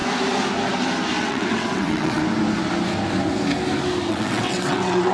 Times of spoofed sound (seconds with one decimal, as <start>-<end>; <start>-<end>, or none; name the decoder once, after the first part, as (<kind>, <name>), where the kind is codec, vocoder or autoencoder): 1.2-2.2 (vocoder, WaveNeXt); 4.1-5.1